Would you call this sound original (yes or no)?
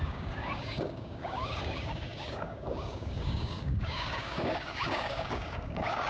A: no